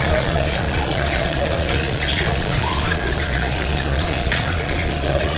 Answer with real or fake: fake